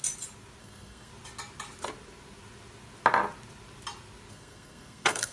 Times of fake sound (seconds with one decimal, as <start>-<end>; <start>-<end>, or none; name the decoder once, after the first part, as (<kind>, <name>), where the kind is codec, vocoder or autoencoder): 0.6-1.1 (codec, SNAC); 4.3-5.3